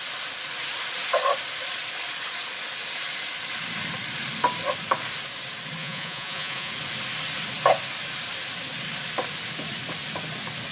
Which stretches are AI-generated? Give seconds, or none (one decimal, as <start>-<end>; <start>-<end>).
5.8-6.7